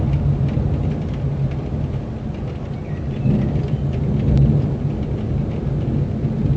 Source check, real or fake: real